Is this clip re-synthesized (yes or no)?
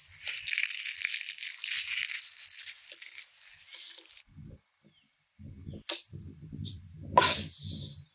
no